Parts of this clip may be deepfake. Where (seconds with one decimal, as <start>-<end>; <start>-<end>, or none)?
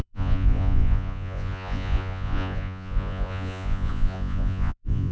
0.0-5.1